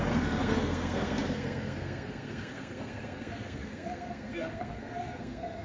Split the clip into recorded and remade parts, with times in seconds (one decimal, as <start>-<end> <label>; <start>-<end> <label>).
0.0-5.6 remade

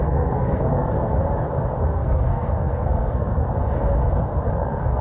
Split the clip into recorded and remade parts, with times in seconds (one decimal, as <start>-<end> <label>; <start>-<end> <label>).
0.0-1.2 remade; 1.2-1.8 recorded; 1.8-3.4 remade; 3.4-4.5 recorded; 4.5-5.0 remade